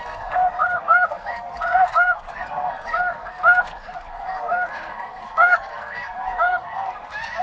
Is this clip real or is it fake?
fake